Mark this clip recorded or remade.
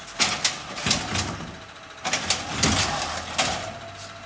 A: recorded